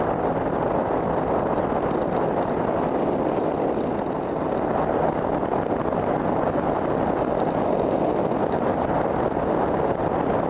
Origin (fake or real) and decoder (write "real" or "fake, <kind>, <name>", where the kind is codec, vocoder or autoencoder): real